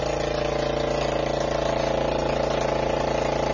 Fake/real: real